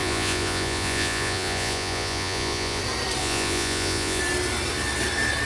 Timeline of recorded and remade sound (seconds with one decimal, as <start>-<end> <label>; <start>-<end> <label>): 0.0-2.8 remade; 2.8-3.2 recorded; 3.2-4.2 remade; 4.2-5.5 recorded